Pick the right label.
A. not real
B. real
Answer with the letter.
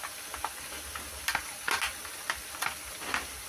B